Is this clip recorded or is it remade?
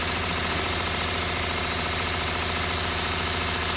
recorded